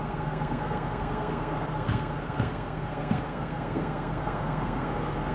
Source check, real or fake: fake